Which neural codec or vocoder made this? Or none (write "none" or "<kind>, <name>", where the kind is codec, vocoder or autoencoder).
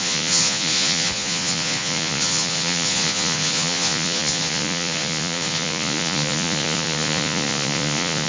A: vocoder, Vocos